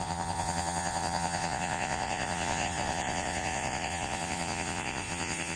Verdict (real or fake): fake